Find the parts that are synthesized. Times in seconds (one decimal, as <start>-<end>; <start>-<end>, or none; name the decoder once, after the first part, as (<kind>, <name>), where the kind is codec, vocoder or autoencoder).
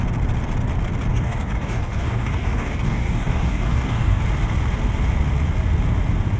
1.1-4.2 (codec, DAC)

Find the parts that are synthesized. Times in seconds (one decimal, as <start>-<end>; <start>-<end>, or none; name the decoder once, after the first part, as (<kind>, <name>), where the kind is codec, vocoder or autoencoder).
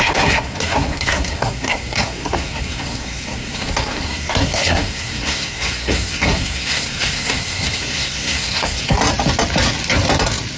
0.0-9.0 (codec, SNAC)